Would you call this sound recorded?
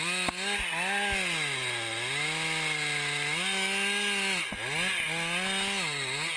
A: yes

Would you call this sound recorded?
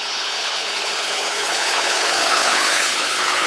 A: no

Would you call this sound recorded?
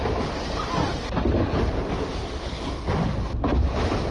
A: yes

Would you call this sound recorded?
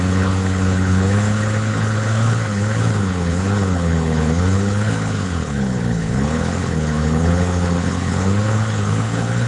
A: no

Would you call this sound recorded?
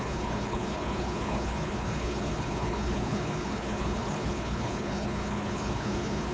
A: no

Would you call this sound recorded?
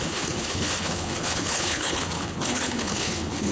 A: no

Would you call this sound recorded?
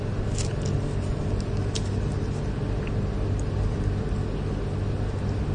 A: yes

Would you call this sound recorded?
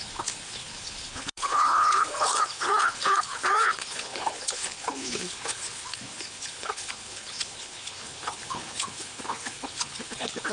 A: no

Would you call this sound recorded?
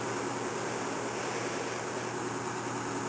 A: yes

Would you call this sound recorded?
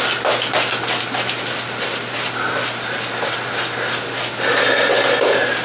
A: yes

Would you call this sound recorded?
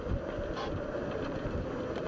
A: yes